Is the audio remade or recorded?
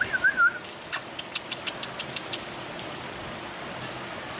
recorded